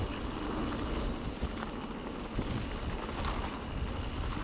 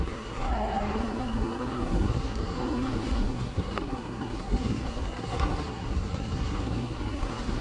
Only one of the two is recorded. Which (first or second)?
first